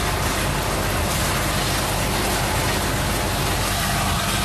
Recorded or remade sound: recorded